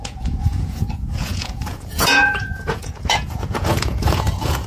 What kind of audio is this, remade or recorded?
remade